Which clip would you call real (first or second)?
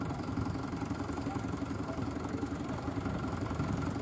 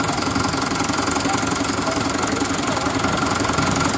second